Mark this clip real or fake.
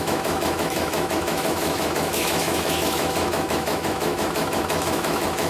fake